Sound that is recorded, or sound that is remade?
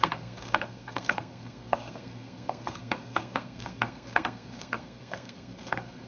remade